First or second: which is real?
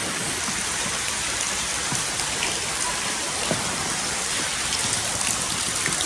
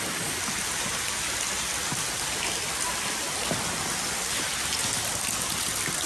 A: second